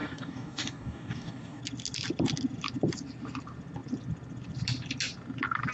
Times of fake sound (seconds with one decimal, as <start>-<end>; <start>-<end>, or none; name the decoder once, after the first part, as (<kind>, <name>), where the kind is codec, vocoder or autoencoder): 0.0-1.6 (codec, DAC)